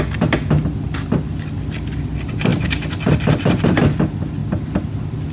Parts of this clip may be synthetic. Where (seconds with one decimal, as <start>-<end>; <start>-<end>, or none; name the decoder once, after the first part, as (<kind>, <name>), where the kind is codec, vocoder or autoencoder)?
none

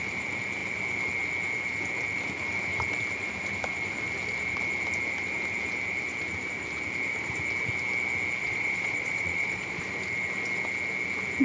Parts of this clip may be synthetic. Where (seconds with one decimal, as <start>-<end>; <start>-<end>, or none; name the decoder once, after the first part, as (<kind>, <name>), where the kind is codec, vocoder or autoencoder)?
8.4-9.8 (vocoder, Vocos)

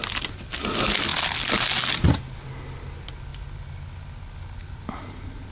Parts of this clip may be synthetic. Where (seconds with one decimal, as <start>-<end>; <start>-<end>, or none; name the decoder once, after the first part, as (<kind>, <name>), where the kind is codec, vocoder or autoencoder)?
none